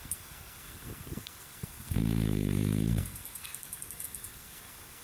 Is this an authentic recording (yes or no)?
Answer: no